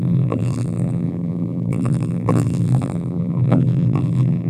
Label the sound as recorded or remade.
remade